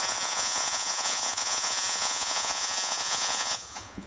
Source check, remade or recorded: remade